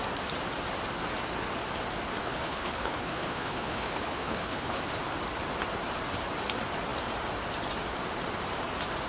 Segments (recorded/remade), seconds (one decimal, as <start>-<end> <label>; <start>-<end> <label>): 0.0-2.2 recorded; 2.2-4.8 remade; 4.8-9.1 recorded